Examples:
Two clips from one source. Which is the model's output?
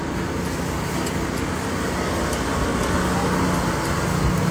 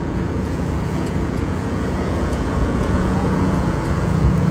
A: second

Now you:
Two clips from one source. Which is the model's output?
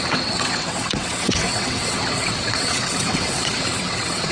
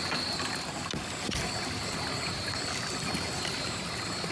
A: first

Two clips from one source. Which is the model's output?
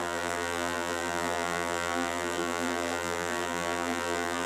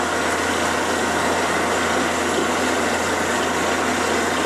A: first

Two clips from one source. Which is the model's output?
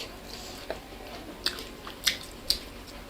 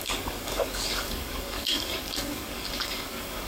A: second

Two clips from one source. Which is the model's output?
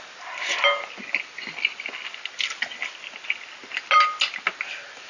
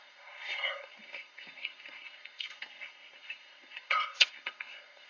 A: second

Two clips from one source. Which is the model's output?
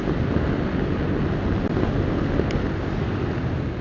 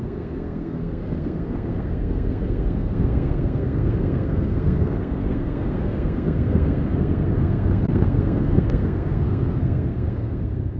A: second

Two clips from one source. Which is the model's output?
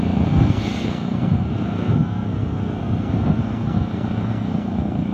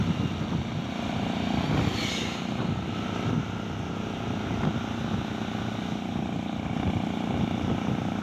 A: first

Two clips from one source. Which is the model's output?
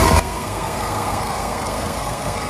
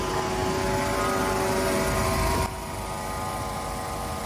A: first